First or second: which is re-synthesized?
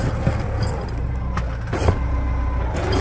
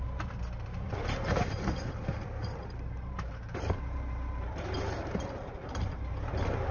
second